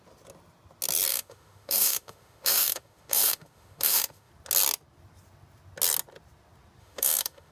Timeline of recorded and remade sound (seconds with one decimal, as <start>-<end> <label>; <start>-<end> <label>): 0.0-1.1 recorded; 1.1-4.3 remade; 4.3-6.8 recorded; 6.8-7.5 remade